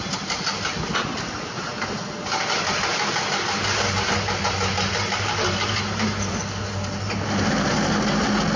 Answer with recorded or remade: recorded